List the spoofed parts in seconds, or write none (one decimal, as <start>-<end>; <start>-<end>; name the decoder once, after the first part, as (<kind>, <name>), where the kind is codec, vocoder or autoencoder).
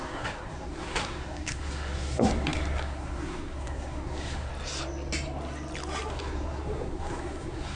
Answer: 0.0-4.5 (codec, SNAC); 6.1-7.8